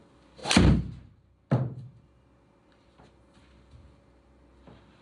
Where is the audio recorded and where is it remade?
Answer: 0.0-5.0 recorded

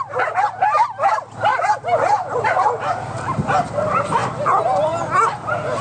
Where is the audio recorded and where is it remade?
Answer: 0.0-1.5 recorded; 1.5-2.4 remade; 2.4-5.8 recorded

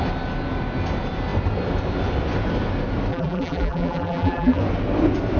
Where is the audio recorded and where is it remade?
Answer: 0.0-3.1 recorded; 3.1-4.6 remade; 4.6-5.4 recorded

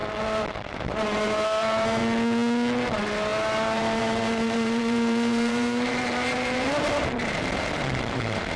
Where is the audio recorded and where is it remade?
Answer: 0.0-2.0 remade; 2.0-2.9 recorded; 2.9-8.6 remade

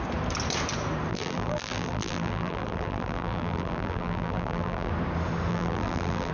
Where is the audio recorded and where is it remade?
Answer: 0.0-1.1 recorded; 1.1-4.9 remade; 4.9-5.5 recorded; 5.5-6.3 remade

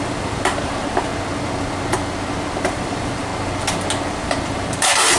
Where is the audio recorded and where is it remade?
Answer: 0.0-1.1 remade; 1.1-2.7 recorded; 2.7-3.3 remade; 3.3-4.1 recorded; 4.1-5.2 remade

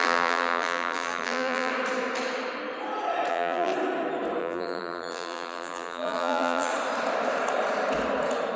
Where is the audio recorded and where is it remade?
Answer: 0.0-1.7 remade; 1.7-3.3 recorded; 3.3-3.7 remade; 3.7-4.4 recorded; 4.4-6.7 remade; 6.7-8.6 recorded

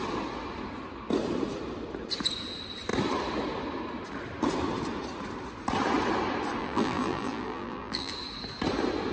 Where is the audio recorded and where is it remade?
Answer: 0.0-6.6 recorded; 6.6-8.1 remade; 8.1-9.1 recorded